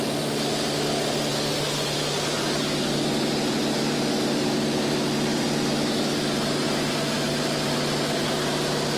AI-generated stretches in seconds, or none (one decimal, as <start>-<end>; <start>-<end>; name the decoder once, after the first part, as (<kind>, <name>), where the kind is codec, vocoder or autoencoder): none